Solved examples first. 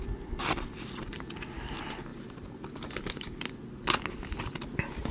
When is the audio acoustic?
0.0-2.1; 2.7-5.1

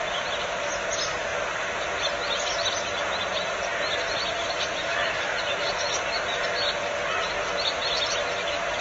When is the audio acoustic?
0.0-8.8